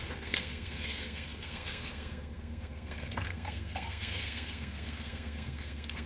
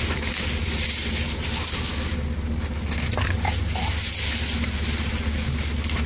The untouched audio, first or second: second